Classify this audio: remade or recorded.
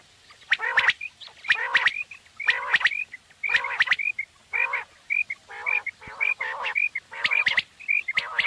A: recorded